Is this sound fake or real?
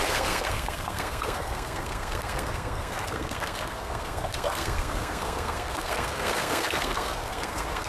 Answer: fake